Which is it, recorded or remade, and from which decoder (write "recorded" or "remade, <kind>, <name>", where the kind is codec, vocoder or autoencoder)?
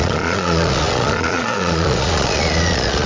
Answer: remade, vocoder, Vocos